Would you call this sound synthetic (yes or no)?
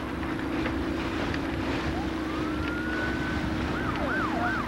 no